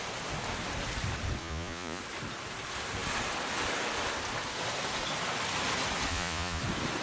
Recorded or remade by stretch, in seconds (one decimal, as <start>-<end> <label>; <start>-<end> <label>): 0.0-1.4 recorded; 1.4-2.0 remade; 2.0-6.1 recorded; 6.1-6.6 remade; 6.6-7.0 recorded